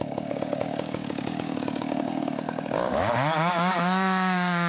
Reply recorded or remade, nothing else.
remade